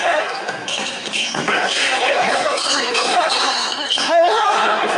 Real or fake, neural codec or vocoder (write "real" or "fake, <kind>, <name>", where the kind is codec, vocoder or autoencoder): fake, codec, SNAC